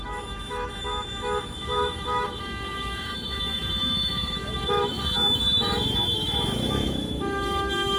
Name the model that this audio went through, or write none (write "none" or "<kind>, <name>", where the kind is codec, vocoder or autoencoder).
autoencoder, DAC-VAE